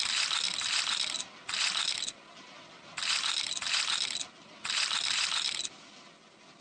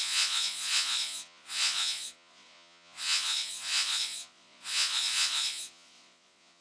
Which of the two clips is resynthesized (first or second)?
second